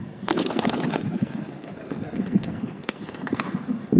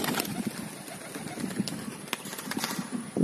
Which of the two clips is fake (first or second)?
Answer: first